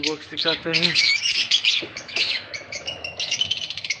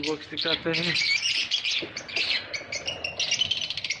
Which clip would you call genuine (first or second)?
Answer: second